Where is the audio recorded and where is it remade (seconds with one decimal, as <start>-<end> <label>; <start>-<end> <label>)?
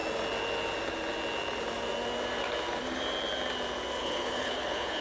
0.0-4.0 recorded; 4.0-5.0 remade